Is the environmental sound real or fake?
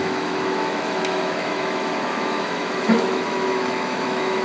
fake